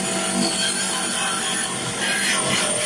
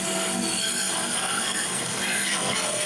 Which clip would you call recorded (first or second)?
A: first